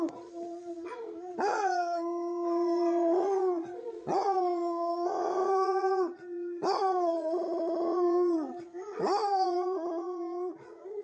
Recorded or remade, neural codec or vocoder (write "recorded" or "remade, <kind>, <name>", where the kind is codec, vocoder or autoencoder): remade, vocoder, Vocos